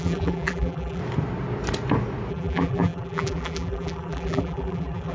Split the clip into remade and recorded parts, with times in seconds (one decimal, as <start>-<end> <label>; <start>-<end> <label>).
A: 0.0-1.0 remade; 1.0-2.3 recorded; 2.3-5.1 remade